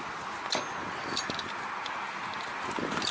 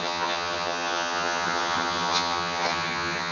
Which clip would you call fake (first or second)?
second